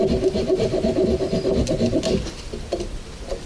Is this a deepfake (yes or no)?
no